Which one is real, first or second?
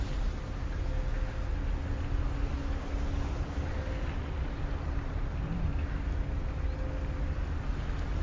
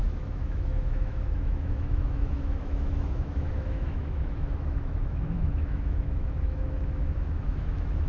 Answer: first